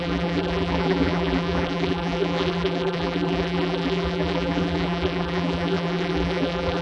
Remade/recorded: remade